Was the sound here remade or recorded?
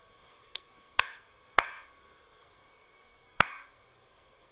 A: remade